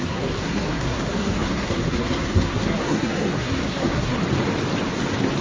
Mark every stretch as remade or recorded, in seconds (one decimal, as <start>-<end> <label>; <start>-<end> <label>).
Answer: 0.0-4.2 remade; 4.2-5.4 recorded